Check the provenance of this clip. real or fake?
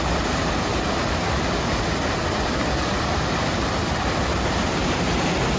real